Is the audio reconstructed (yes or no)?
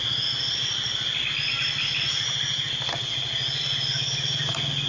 no